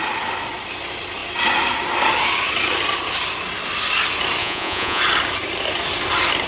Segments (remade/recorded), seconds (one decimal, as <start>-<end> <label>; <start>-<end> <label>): 0.0-4.4 recorded; 4.4-5.0 remade; 5.0-6.5 recorded